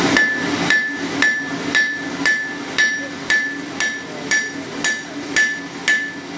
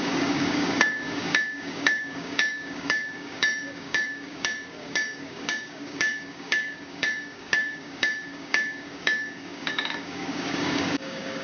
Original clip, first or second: first